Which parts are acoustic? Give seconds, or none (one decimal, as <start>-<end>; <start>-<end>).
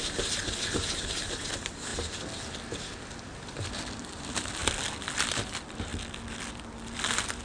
0.0-7.4